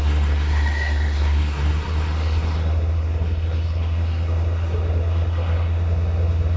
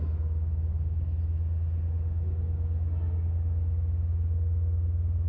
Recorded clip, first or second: second